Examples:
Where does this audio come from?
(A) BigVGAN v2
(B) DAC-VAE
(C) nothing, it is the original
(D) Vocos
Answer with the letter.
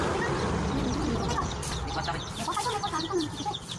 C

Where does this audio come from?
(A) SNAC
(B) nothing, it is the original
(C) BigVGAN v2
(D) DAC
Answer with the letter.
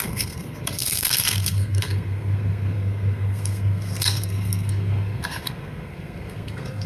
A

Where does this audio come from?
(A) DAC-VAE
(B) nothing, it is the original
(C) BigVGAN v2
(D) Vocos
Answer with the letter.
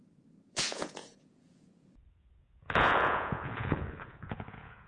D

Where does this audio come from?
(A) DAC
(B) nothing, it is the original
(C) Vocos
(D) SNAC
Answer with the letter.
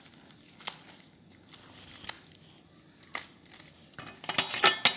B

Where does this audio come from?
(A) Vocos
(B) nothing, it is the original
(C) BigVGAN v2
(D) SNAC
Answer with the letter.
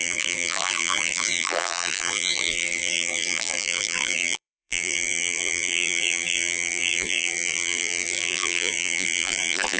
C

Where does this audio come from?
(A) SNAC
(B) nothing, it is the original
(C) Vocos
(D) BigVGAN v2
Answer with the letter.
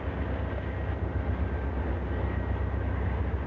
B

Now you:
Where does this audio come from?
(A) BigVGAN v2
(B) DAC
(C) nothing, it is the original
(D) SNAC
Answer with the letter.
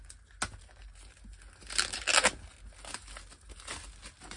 C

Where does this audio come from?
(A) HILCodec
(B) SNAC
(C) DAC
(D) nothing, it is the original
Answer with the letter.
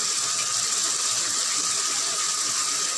D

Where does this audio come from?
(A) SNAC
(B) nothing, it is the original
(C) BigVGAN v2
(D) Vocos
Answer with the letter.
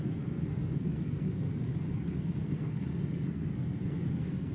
A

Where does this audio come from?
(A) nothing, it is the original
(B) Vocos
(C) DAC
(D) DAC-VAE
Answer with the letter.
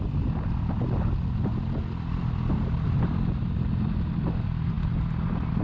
A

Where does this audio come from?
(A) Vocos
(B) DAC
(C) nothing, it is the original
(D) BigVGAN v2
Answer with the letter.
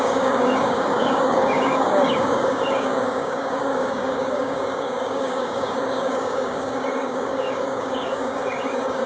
B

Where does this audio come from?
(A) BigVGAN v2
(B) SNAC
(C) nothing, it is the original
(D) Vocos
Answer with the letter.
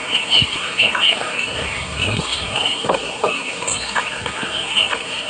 B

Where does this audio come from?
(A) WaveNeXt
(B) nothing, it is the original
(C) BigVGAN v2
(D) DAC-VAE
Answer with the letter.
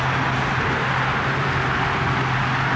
B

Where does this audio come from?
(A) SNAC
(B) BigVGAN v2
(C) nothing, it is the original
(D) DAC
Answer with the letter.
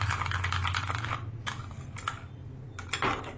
C